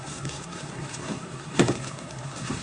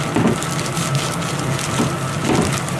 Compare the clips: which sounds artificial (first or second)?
first